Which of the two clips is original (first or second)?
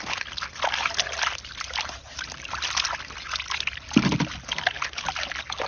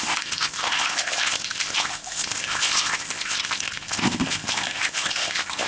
first